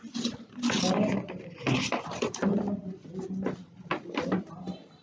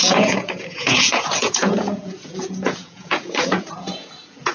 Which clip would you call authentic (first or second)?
first